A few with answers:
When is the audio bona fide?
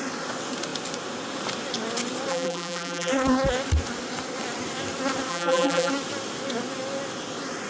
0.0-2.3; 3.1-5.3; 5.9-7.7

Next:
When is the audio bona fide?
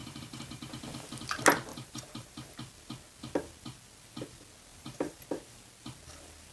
0.8-1.7; 2.5-4.7; 5.2-6.5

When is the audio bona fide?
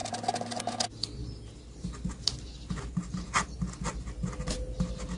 0.6-5.2